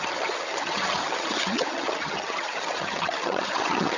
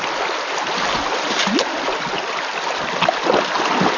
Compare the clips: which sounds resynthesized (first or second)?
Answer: first